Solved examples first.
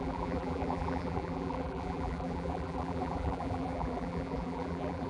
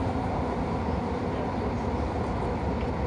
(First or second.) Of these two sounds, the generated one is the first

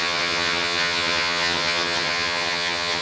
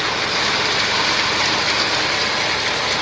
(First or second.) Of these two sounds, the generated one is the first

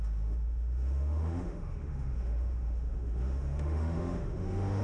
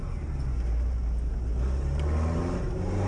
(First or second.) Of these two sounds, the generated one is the first